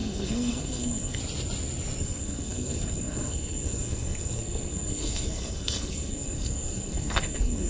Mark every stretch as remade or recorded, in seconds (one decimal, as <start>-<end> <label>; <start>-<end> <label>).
0.0-1.2 remade; 1.2-2.0 recorded; 2.0-7.7 remade